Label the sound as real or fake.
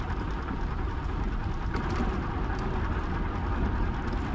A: real